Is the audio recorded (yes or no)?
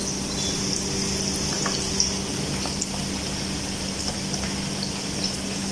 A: yes